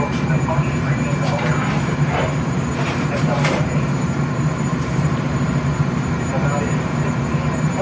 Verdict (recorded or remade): remade